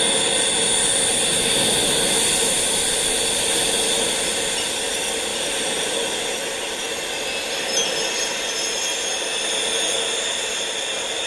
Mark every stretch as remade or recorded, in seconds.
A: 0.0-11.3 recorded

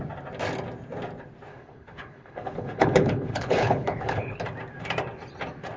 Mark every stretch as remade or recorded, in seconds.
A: 0.0-1.5 recorded; 1.5-4.4 remade; 4.4-5.8 recorded

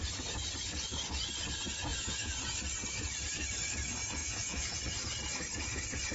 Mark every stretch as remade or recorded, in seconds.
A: 0.0-1.9 recorded; 1.9-2.4 remade; 2.4-4.2 recorded; 4.2-4.8 remade; 4.8-6.1 recorded

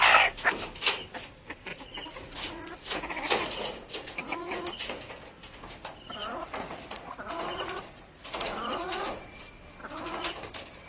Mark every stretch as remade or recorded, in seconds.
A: 0.0-1.7 recorded; 1.7-5.1 remade; 5.1-6.2 recorded; 6.2-9.4 remade; 9.4-9.8 recorded; 9.8-10.5 remade; 10.5-10.9 recorded

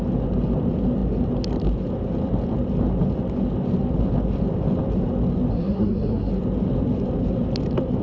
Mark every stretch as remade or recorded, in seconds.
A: 0.0-5.5 recorded; 5.5-6.3 remade; 6.3-8.0 recorded

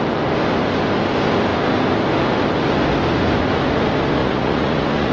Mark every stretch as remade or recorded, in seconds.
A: 0.0-4.2 recorded; 4.2-5.1 remade

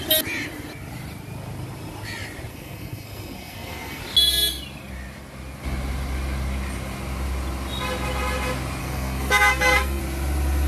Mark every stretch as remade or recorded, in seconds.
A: 0.0-2.5 recorded; 2.5-4.0 remade; 4.0-8.8 recorded; 8.8-10.0 remade; 10.0-10.7 recorded

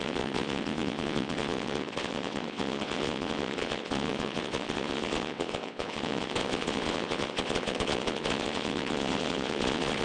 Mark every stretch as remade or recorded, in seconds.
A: 0.0-10.0 remade